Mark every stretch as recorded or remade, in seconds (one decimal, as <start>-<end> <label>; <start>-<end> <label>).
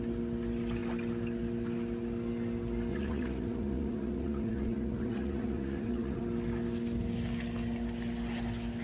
0.0-2.9 recorded; 2.9-6.2 remade; 6.2-8.8 recorded